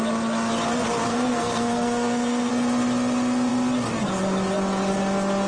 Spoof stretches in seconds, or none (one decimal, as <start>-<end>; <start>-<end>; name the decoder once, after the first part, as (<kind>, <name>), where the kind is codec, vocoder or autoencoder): 1.1-2.5 (codec, SNAC)